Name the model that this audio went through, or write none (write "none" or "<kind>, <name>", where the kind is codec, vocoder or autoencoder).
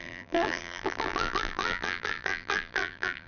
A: vocoder, BigVGAN v2